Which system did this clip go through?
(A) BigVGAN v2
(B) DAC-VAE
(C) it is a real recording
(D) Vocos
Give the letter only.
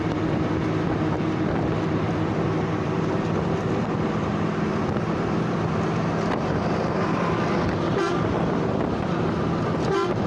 A